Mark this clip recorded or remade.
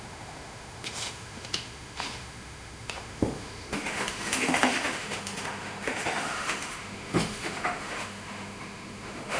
remade